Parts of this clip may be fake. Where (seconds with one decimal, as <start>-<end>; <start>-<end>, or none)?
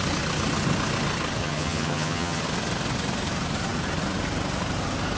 1.4-2.4